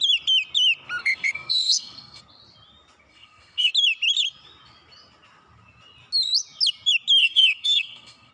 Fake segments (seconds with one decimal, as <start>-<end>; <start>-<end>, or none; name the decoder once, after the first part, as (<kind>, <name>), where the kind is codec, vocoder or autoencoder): 1.0-2.2 (codec, SNAC); 3.1-3.7; 7.2-8.3